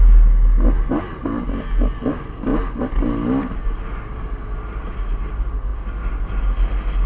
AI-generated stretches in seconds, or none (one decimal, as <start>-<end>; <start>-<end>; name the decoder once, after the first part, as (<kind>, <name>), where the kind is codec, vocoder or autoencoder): none